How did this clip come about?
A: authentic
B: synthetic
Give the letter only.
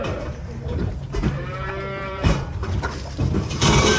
B